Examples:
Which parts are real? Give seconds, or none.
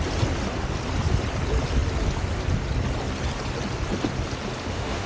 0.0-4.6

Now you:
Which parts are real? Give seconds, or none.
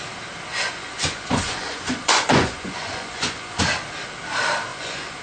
0.0-0.5; 3.6-4.7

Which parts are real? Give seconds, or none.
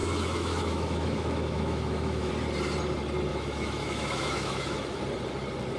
2.3-3.3; 5.0-5.8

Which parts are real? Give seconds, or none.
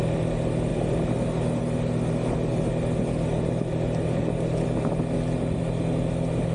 0.0-6.5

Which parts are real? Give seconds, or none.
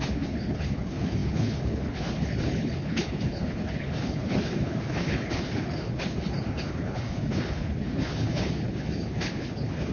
none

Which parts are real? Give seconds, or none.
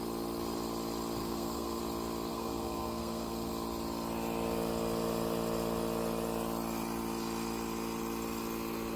0.0-1.2; 1.8-2.3; 3.5-9.0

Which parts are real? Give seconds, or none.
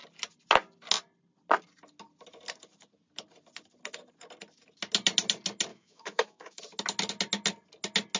0.0-5.7; 6.6-8.2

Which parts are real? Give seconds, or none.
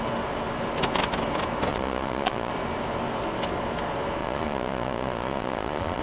0.0-1.7; 2.5-4.2